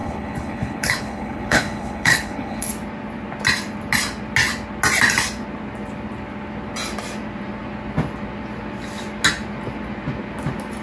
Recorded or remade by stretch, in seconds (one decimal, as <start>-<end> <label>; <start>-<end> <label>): 0.0-2.7 remade; 2.7-10.8 recorded